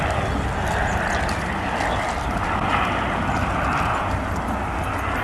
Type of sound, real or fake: real